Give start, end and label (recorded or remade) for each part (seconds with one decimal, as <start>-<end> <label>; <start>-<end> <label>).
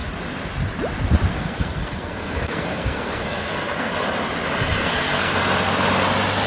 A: 0.0-1.3 recorded; 1.3-3.9 remade; 3.9-4.8 recorded; 4.8-5.3 remade; 5.3-6.5 recorded